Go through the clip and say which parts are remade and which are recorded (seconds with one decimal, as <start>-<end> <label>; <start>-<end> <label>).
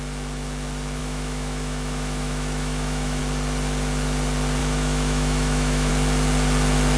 0.0-1.0 recorded; 1.0-3.2 remade; 3.2-4.6 recorded; 4.6-5.9 remade; 5.9-7.0 recorded